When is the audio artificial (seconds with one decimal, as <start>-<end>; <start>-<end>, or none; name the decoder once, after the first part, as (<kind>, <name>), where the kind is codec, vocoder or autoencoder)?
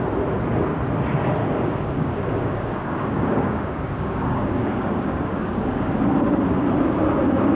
1.4-5.9 (codec, DAC)